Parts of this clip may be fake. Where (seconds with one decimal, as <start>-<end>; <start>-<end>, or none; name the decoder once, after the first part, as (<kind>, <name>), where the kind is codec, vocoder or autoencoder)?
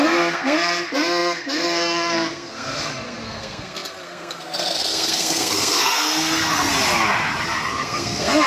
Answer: 0.0-6.7 (codec, SNAC); 7.7-8.5